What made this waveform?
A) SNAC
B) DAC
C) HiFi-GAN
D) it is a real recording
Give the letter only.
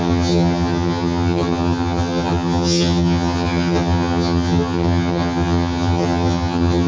C